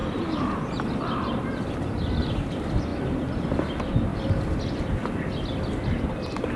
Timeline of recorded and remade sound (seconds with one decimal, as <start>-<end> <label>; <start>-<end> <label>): 0.0-6.6 recorded